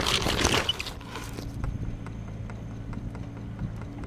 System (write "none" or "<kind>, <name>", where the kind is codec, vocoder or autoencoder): none